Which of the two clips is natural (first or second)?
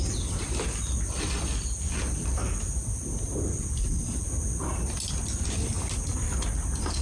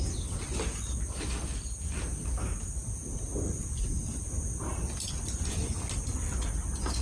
second